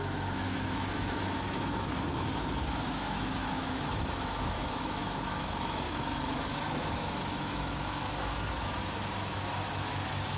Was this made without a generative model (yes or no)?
no